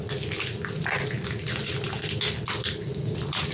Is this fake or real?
real